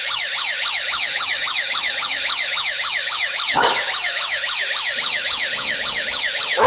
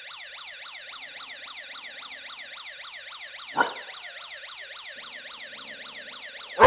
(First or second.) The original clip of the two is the second